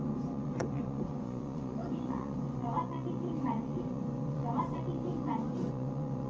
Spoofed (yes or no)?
yes